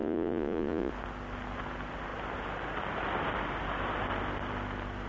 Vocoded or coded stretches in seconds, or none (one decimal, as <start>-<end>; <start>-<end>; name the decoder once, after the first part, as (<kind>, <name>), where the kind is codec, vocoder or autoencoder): 0.0-0.9 (vocoder, Vocos)